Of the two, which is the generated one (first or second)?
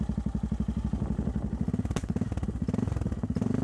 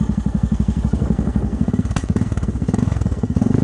second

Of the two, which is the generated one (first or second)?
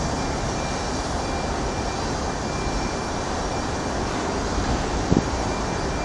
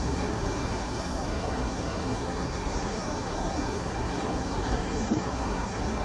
second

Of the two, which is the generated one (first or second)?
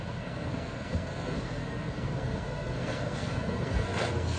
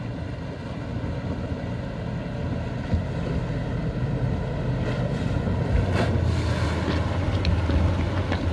first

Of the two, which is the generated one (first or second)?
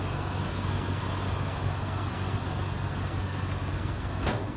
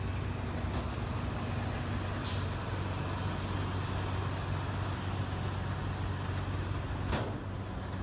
first